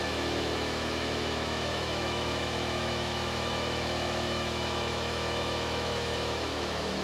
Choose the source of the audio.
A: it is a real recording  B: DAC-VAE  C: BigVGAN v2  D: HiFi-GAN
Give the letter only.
B